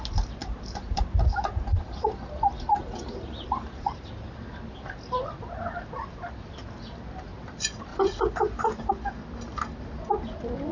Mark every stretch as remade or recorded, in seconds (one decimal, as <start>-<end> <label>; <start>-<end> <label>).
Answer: 0.0-0.4 recorded; 0.4-4.1 remade; 4.1-7.9 recorded; 7.9-8.9 remade; 8.9-10.7 recorded

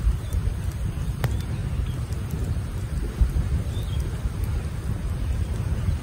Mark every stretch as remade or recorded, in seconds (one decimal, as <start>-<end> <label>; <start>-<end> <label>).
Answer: 0.0-0.4 recorded; 0.4-1.1 remade; 1.1-1.6 recorded; 1.6-3.4 remade; 3.4-6.0 recorded